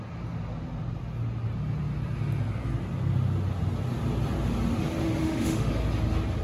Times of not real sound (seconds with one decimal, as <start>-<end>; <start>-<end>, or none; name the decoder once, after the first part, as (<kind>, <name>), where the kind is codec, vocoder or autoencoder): 5.2-5.7 (autoencoder, DAC-VAE)